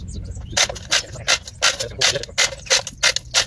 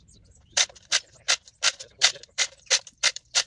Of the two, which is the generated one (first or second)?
second